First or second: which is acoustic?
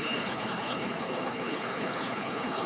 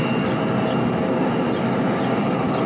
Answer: second